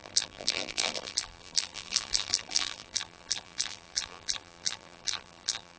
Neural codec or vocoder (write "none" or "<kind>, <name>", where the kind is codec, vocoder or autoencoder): vocoder, BigVGAN v2